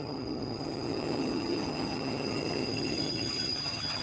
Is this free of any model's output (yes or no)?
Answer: no